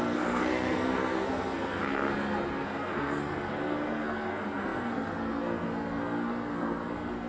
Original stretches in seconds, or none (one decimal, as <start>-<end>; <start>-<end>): none